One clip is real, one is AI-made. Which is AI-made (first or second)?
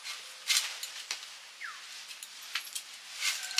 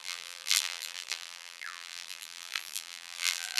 second